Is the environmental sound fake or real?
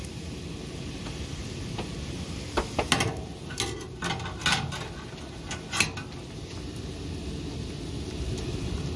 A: real